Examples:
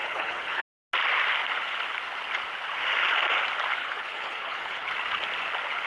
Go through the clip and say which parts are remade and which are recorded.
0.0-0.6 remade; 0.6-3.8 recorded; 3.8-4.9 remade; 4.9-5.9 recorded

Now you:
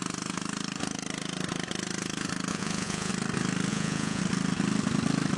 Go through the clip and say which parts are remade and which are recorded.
0.0-2.5 recorded; 2.5-3.1 remade; 3.1-3.7 recorded; 3.7-4.2 remade; 4.2-5.4 recorded

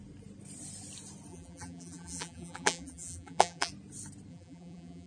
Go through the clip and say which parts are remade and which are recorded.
0.0-1.3 recorded; 1.3-3.7 remade; 3.7-4.3 recorded; 4.3-5.1 remade

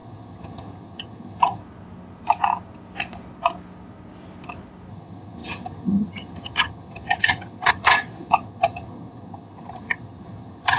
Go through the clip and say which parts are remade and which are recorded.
0.0-1.6 remade; 1.6-4.9 recorded; 4.9-10.8 remade

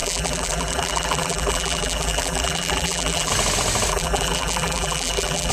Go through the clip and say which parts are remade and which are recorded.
0.0-3.3 remade; 3.3-3.9 recorded; 3.9-5.5 remade

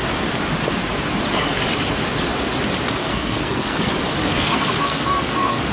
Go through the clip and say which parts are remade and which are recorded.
0.0-3.0 recorded; 3.0-3.9 remade; 3.9-4.3 recorded; 4.3-5.7 remade

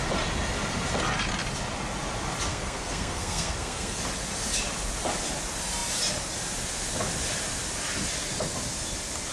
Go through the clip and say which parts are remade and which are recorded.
0.0-2.5 recorded; 2.5-4.0 remade; 4.0-9.3 recorded

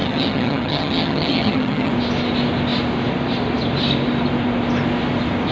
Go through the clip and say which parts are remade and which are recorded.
0.0-1.9 remade; 1.9-5.5 recorded